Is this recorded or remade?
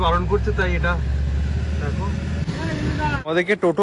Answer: recorded